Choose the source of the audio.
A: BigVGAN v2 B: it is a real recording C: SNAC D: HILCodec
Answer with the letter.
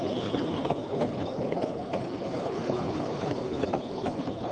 D